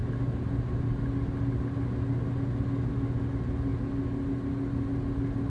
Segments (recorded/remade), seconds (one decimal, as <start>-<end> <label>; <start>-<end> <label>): 0.0-5.5 recorded